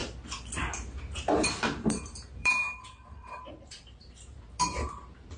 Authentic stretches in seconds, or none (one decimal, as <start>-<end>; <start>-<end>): 0.0-0.7; 2.6-3.4